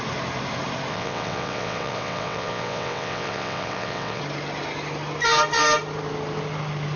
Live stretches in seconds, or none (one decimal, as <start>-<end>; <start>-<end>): 0.0-0.9; 4.2-7.0